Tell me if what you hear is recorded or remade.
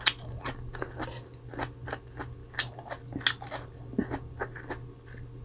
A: recorded